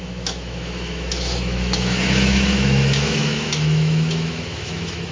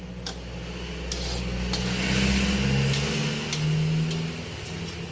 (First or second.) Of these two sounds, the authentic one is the second